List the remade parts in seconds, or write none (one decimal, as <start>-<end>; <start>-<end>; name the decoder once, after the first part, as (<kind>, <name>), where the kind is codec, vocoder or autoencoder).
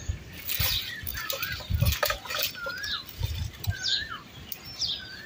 3.9-4.5 (vocoder, BigVGAN v2)